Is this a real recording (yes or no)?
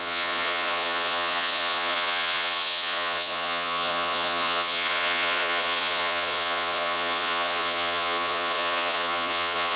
no